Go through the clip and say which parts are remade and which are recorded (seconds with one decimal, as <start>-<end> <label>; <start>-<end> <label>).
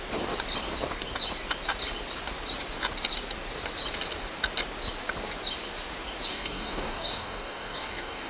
0.0-6.3 recorded; 6.3-8.3 remade